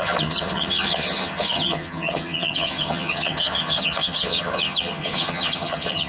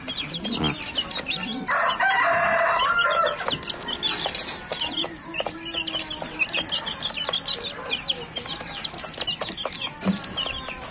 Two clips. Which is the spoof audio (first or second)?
first